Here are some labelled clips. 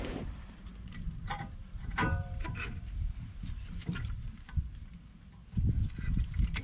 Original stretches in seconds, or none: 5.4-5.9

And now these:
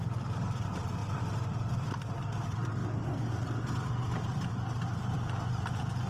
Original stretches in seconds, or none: none

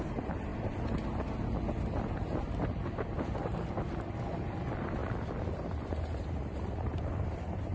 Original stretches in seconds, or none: 0.5-4.3; 5.0-5.5